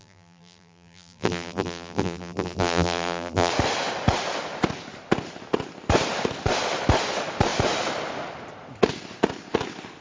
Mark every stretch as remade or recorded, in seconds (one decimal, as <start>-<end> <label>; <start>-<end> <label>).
0.0-3.5 remade; 3.5-10.0 recorded